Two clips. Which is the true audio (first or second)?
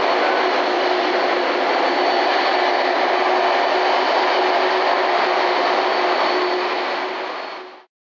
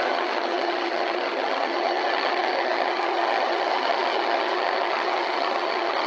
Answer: first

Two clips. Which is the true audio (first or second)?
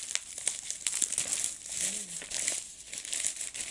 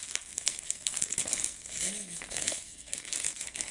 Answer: first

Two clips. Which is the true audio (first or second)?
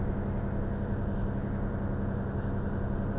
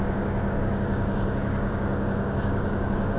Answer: first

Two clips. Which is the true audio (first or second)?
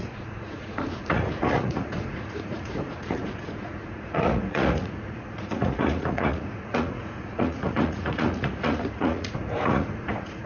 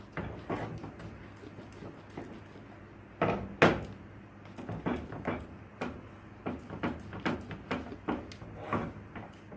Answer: second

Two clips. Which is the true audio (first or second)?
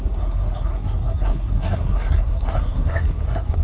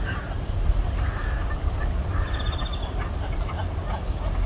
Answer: second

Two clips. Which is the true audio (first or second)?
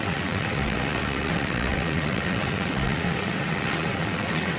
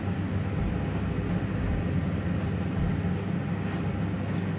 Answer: second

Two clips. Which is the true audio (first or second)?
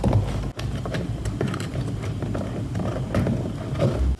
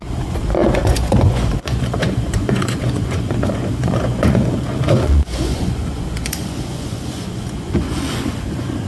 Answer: first